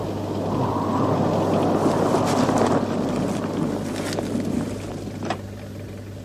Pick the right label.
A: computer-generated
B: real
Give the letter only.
B